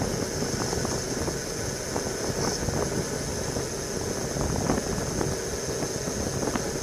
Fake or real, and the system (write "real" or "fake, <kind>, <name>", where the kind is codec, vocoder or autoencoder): real